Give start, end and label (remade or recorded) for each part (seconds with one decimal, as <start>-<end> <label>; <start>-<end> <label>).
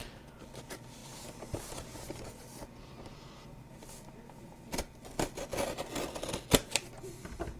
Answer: 0.0-7.6 recorded